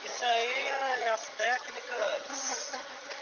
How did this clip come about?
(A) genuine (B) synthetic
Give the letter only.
B